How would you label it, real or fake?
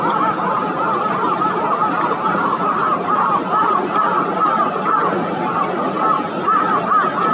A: real